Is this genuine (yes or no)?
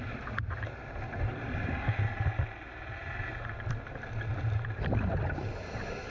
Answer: yes